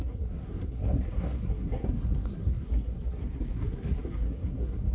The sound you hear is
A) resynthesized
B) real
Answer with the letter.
A